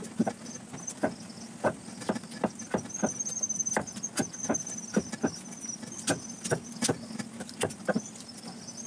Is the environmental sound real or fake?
real